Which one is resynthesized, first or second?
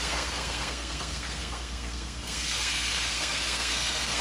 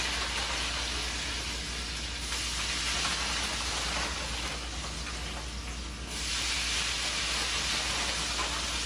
first